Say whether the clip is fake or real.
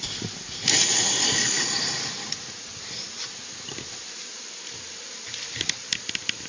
real